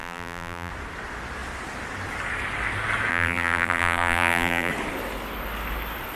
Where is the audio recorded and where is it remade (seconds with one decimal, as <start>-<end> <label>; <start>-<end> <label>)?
0.0-0.7 remade; 0.7-3.1 recorded; 3.1-4.7 remade; 4.7-6.2 recorded